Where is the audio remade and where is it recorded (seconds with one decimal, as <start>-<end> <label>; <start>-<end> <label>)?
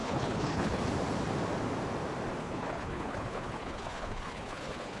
0.0-0.8 remade; 0.8-2.4 recorded; 2.4-5.0 remade